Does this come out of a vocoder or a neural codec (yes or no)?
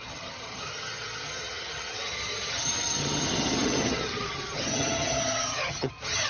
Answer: yes